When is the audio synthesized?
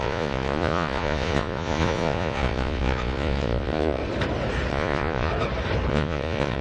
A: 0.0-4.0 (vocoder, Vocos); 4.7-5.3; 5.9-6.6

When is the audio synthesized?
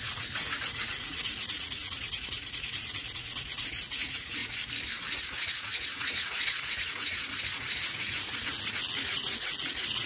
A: 0.0-4.4 (vocoder, Vocos); 5.2-10.1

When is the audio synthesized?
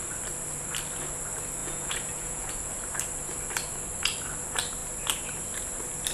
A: 1.6-2.7 (vocoder, Vocos)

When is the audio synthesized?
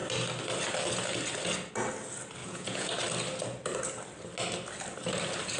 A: 2.4-2.9 (vocoder, Vocos)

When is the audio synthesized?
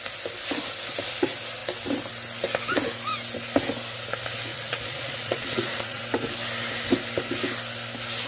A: 4.5-6.0 (vocoder, Vocos)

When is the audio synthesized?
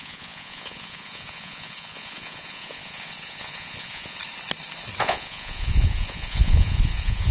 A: 0.0-4.2 (vocoder, Vocos); 5.0-7.3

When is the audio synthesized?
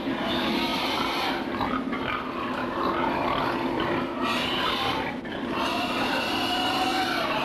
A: none